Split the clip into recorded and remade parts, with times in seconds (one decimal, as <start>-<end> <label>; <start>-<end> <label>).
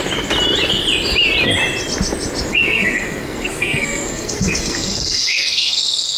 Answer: 0.0-2.5 recorded; 2.5-6.2 remade